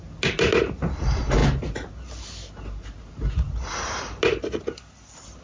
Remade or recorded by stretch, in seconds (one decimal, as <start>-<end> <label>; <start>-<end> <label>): 0.0-5.4 recorded